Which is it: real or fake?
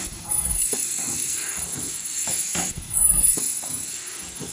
fake